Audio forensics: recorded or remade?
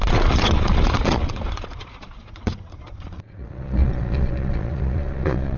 remade